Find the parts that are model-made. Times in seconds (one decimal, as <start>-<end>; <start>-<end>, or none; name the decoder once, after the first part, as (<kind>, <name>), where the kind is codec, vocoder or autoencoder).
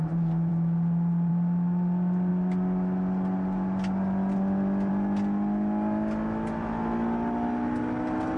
none